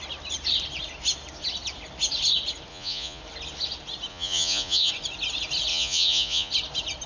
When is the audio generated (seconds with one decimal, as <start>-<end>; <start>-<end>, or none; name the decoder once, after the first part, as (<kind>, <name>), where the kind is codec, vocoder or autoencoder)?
2.7-3.2 (vocoder, Vocos); 4.1-4.9; 5.7-6.5